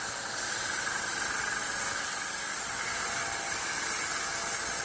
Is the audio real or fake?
real